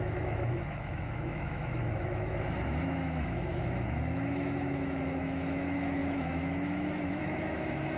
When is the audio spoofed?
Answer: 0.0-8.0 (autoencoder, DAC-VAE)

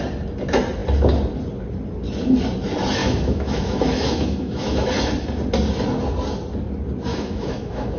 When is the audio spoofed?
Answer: 3.0-4.9 (autoencoder, DAC-VAE); 7.1-8.0

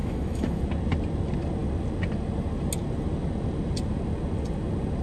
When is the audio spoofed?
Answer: 0.0-0.6 (autoencoder, DAC-VAE)

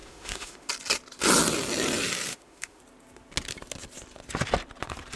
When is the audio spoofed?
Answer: 0.0-0.7 (autoencoder, DAC-VAE); 2.3-2.8

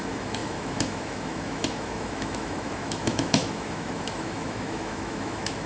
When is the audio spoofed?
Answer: 0.0-5.7 (autoencoder, DAC-VAE)

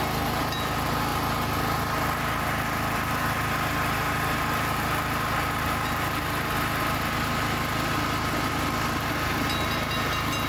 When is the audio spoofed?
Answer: none

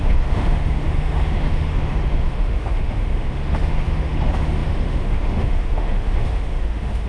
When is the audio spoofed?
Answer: 0.0-7.1 (autoencoder, DAC-VAE)